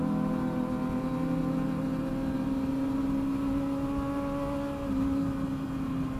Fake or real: real